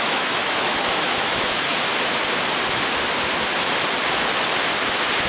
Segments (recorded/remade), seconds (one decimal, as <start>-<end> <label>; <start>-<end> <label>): 0.0-1.7 remade; 1.7-5.3 recorded